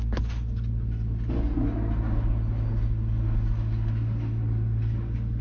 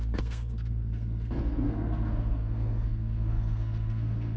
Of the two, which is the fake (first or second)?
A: second